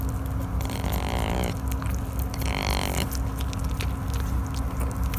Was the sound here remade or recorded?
recorded